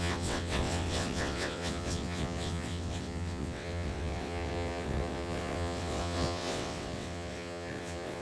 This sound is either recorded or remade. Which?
remade